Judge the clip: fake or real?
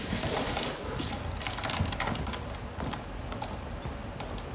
real